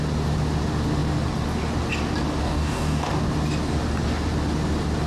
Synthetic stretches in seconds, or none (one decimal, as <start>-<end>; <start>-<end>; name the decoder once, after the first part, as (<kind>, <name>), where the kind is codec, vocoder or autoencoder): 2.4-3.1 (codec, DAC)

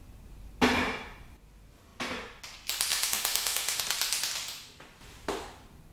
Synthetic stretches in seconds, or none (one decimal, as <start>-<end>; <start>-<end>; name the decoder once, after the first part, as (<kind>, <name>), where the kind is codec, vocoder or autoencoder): 2.9-3.8 (autoencoder, DAC-VAE)

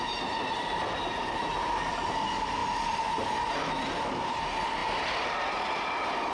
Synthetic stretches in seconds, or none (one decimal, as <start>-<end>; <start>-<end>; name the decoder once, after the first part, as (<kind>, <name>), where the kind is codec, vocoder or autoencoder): none

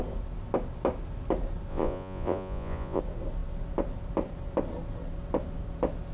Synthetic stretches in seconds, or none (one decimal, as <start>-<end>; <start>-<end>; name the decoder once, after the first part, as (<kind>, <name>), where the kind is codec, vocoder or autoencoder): 1.7-3.0 (vocoder, Vocos)

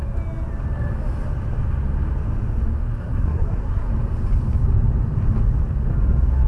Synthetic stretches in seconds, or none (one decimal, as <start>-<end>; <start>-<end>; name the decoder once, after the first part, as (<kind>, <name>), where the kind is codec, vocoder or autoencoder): 3.0-3.9 (codec, SNAC)

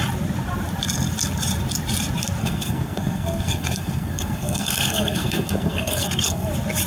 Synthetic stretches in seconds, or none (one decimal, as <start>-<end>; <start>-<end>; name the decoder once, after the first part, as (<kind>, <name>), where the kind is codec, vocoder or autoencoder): 2.4-6.5 (codec, SNAC)

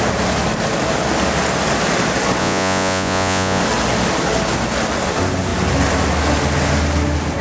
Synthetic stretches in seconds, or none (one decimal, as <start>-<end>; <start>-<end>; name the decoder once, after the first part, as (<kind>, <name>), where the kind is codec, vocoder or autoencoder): 2.4-3.6 (vocoder, Vocos)

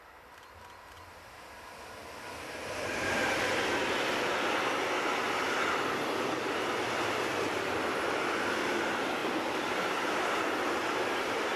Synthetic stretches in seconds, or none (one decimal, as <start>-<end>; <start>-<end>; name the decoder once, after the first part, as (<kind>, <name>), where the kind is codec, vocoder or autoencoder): none